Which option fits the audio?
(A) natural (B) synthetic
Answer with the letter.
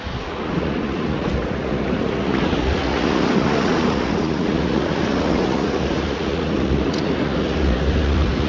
B